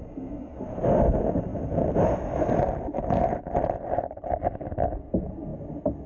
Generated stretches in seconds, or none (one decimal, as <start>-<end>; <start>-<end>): none